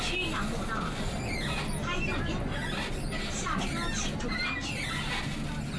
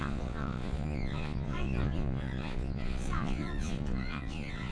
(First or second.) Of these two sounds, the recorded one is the first